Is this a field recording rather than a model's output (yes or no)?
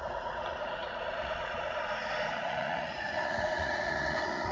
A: no